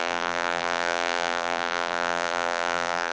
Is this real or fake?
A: fake